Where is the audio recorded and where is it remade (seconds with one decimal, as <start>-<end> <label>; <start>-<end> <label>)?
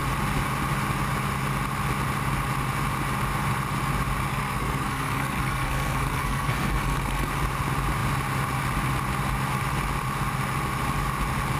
0.0-4.3 recorded; 4.3-7.3 remade; 7.3-11.6 recorded